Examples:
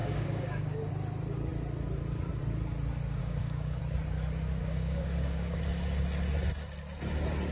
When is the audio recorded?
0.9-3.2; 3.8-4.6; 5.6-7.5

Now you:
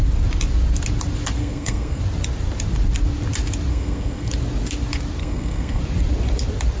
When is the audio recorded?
0.0-1.4; 2.0-3.7; 4.3-5.2; 5.8-6.8

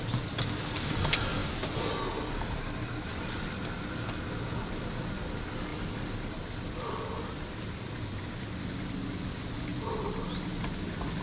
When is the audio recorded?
0.0-11.2

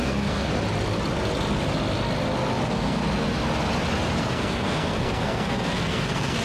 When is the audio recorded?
0.5-2.6; 3.0-4.2

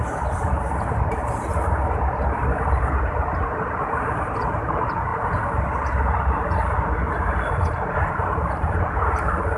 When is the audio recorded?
1.5-2.1; 5.1-7.1

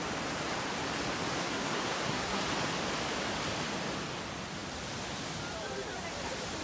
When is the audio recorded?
0.0-1.4; 2.4-6.6

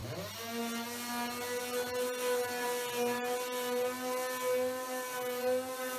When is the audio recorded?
0.0-6.0

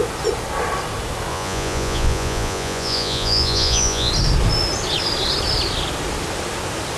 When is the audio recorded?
0.0-1.3; 4.1-7.0